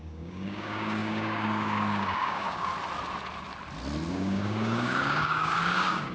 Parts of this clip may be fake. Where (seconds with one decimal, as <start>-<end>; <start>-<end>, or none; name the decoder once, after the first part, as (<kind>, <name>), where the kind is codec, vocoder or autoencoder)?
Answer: 0.0-2.7 (codec, DAC); 4.1-6.1